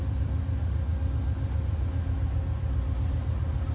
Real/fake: real